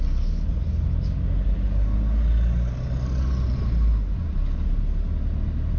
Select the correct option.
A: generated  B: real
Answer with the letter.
B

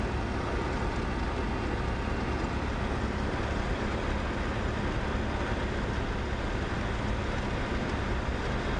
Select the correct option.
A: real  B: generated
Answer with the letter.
A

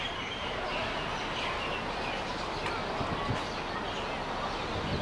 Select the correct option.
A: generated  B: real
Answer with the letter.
B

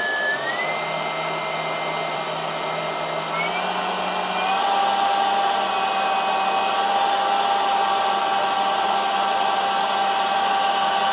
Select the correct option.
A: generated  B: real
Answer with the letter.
B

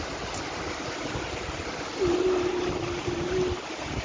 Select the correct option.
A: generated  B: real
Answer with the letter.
B